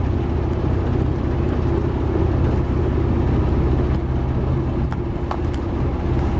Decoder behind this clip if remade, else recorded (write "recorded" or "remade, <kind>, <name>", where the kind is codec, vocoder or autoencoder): recorded